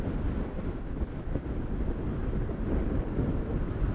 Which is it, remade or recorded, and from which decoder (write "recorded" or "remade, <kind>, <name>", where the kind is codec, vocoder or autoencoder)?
recorded